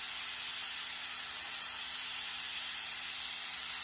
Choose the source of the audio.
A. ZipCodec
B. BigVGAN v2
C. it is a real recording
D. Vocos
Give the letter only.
C